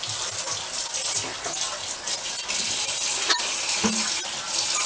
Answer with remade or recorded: recorded